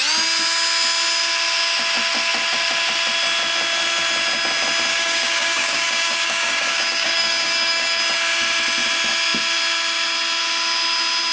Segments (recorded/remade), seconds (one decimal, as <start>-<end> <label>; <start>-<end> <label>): 0.0-4.9 recorded; 4.9-8.0 remade; 8.0-11.3 recorded